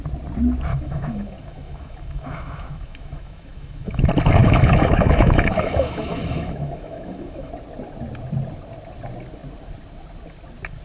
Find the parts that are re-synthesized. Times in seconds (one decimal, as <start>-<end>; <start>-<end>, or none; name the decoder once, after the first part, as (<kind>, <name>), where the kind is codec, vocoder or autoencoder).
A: 0.7-4.0 (autoencoder, DAC-VAE); 4.4-7.5